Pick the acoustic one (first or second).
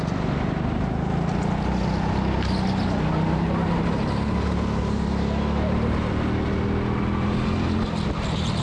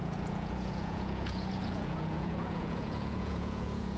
first